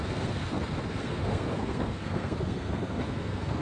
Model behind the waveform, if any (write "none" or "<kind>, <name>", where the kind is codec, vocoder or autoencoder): codec, SNAC